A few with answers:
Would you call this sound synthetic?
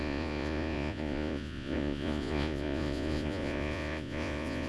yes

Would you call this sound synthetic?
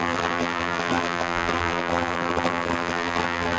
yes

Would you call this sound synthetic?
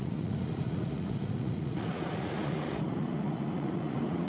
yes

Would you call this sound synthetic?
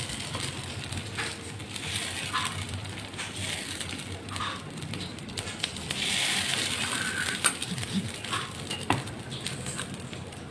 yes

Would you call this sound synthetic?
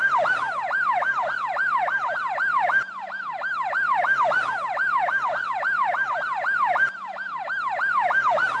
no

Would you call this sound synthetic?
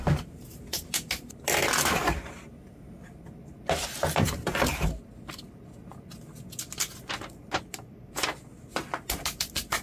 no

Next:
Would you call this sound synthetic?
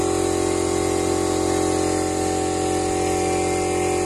no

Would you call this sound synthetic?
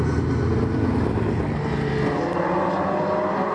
no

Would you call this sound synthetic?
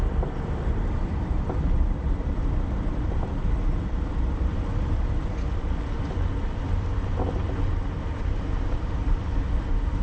yes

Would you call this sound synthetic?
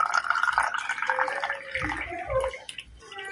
no